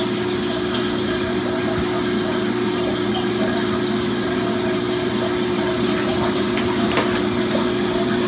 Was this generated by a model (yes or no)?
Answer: no